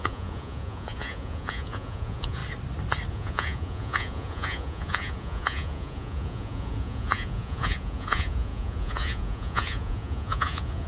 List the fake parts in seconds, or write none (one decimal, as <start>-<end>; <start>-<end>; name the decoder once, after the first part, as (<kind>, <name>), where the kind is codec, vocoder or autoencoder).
0.0-2.4 (vocoder, Vocos); 3.1-10.9